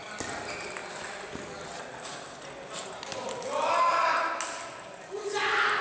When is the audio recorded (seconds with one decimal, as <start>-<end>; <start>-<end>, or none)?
0.0-5.8